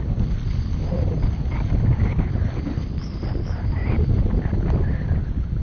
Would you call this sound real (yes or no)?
yes